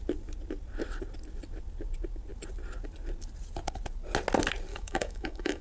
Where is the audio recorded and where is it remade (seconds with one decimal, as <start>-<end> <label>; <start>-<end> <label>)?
0.0-4.7 recorded; 4.7-5.6 remade